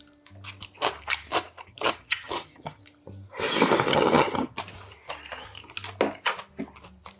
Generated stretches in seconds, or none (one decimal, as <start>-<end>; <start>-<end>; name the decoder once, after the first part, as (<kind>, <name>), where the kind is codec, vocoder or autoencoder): 1.7-2.8 (vocoder, HiFi-GAN); 3.9-4.6